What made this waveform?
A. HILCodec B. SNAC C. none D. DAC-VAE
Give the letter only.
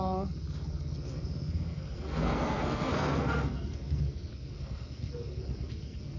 B